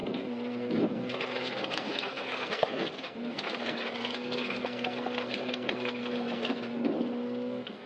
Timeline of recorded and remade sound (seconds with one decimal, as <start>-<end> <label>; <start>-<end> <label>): 0.0-7.9 remade